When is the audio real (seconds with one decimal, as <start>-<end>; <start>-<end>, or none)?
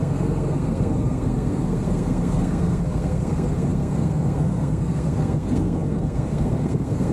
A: none